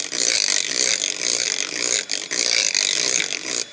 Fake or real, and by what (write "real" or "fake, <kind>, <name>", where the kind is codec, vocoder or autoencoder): real